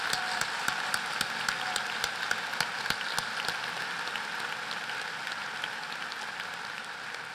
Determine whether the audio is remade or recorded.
recorded